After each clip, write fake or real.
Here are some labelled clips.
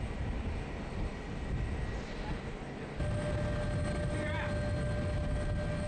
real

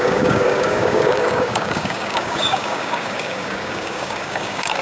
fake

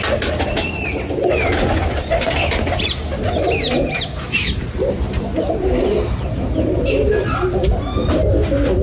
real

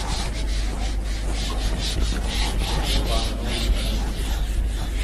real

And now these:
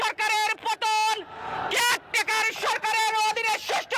real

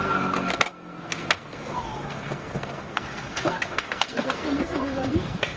fake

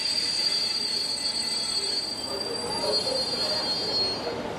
real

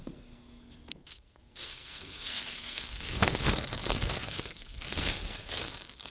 fake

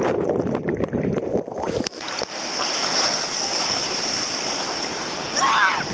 fake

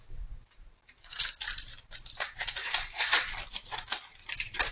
fake